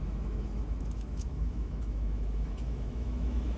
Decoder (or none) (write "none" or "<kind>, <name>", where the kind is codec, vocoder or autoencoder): autoencoder, DAC-VAE